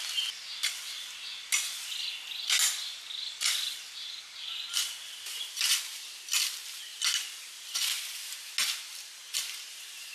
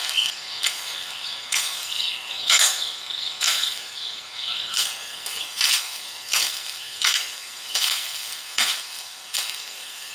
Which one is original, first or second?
first